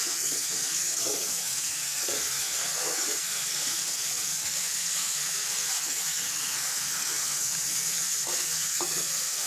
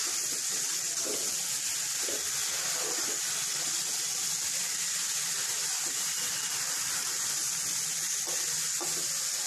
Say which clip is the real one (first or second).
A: second